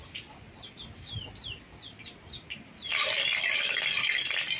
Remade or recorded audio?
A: recorded